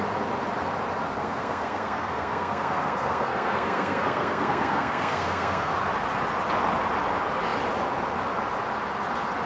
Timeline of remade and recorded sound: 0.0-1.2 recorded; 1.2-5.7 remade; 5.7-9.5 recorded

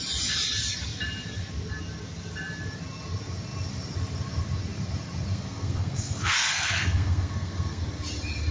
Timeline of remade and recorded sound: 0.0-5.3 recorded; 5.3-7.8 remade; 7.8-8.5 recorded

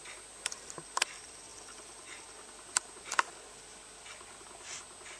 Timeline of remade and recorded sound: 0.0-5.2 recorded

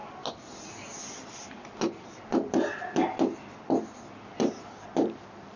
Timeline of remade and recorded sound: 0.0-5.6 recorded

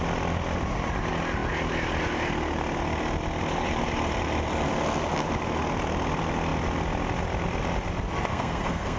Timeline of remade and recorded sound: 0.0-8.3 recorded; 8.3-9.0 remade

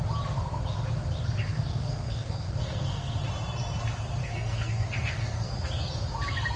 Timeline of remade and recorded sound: 0.0-1.5 recorded; 1.5-3.2 remade; 3.2-4.2 recorded; 4.2-5.5 remade; 5.5-6.6 recorded

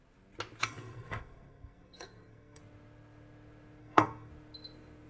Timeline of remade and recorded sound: 0.0-0.6 recorded; 0.6-2.6 remade; 2.6-3.8 recorded; 3.8-4.3 remade; 4.3-5.1 recorded